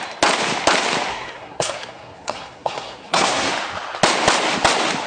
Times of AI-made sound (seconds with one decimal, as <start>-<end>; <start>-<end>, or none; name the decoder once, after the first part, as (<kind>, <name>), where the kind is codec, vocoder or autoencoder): 1.1-3.5 (codec, SNAC)